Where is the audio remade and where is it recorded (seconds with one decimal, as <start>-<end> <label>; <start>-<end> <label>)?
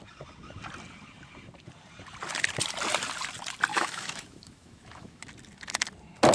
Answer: 0.0-3.7 recorded; 3.7-5.2 remade; 5.2-6.3 recorded